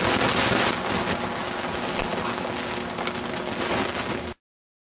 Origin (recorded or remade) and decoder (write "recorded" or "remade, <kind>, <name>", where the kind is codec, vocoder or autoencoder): recorded